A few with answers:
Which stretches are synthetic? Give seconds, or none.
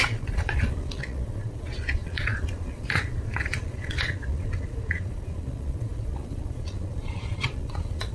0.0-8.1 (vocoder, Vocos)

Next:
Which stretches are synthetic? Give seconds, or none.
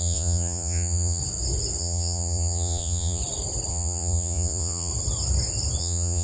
0.0-1.2 (vocoder, Vocos); 1.8-3.2; 3.7-4.9; 5.8-6.2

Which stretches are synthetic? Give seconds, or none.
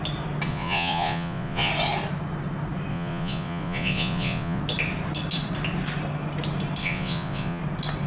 0.5-1.7 (vocoder, Vocos); 2.9-4.6; 6.8-7.6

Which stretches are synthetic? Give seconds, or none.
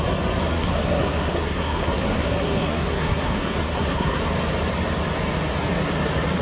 0.4-4.2 (codec, SNAC)